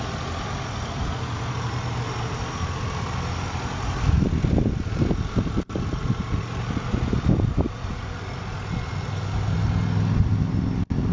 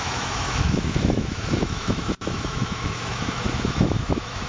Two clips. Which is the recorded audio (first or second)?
first